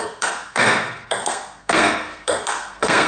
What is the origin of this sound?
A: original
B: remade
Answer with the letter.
B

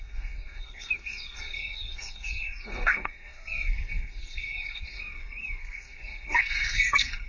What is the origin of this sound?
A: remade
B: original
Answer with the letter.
A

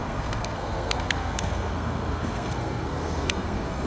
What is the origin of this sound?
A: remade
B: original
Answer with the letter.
A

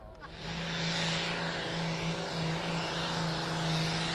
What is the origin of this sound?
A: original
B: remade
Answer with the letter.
A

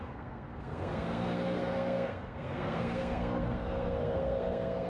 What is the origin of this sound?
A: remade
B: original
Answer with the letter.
A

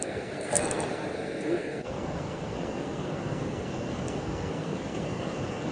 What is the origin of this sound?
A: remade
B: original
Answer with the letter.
A